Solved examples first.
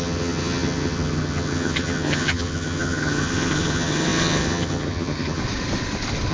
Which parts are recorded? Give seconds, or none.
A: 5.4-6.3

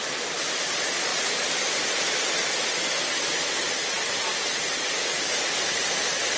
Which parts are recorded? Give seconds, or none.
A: 0.0-6.4

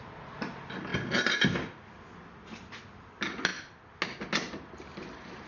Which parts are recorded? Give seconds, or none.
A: 0.0-5.5

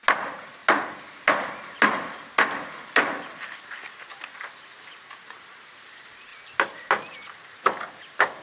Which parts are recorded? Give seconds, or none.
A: 0.0-8.4

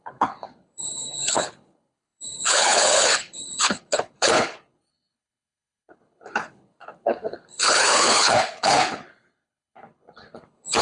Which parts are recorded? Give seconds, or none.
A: none

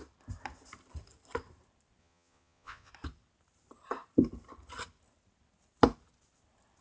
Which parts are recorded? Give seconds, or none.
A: 0.0-2.0; 2.9-6.8